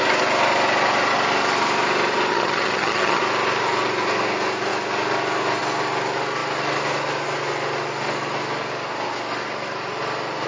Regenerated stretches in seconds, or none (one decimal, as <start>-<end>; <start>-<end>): 2.3-3.2